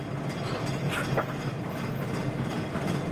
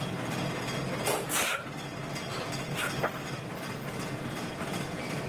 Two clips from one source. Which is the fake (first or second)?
second